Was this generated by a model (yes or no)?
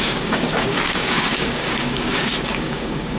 yes